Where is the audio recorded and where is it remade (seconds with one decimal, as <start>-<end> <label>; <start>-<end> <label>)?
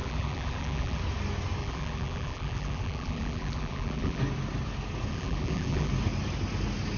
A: 0.0-1.0 remade; 1.0-1.6 recorded; 1.6-4.2 remade; 4.2-5.1 recorded; 5.1-5.9 remade; 5.9-7.0 recorded